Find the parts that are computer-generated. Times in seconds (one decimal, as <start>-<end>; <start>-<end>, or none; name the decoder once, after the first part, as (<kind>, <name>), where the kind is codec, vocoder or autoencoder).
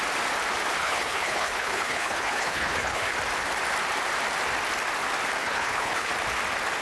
0.8-3.1 (codec, HILCodec); 5.4-6.1